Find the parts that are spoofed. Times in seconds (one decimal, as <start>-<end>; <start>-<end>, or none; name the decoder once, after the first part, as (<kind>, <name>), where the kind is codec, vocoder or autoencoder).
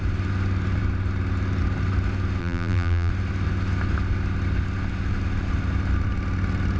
2.4-3.1 (vocoder, BigVGAN v2)